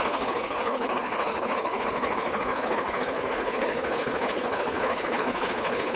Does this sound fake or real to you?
fake